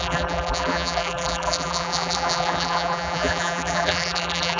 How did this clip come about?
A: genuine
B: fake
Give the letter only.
B